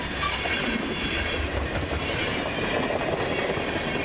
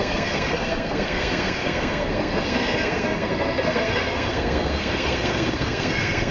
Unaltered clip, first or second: first